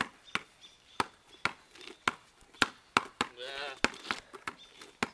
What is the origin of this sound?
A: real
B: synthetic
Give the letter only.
A